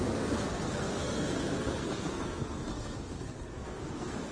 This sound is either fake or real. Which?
fake